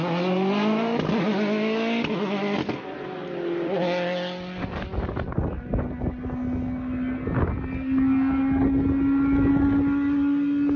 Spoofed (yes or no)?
no